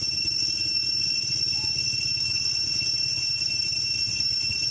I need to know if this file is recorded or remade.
recorded